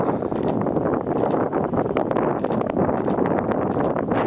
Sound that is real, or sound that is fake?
real